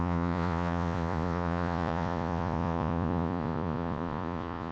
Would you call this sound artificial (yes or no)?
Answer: yes